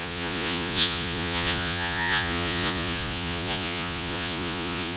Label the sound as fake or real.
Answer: fake